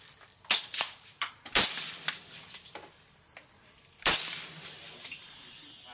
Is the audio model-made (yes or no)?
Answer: yes